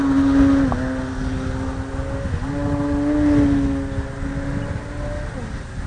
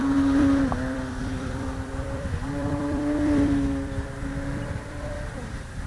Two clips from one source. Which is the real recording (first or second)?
first